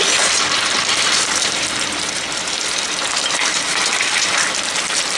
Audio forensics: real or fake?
fake